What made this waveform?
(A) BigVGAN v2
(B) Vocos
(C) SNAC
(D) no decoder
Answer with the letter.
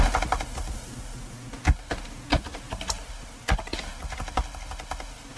D